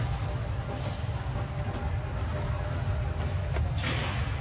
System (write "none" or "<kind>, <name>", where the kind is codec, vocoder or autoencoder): none